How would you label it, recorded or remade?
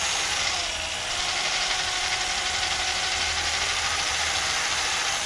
remade